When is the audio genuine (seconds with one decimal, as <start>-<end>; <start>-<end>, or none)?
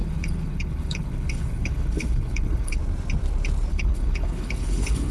2.8-3.7